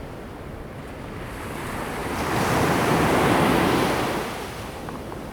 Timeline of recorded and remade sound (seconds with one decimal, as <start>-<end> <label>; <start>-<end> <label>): 0.0-2.0 recorded; 2.0-3.4 remade; 3.4-5.3 recorded